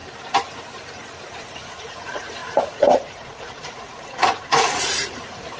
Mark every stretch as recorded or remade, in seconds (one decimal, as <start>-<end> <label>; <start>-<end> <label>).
0.0-1.3 recorded; 1.3-5.6 remade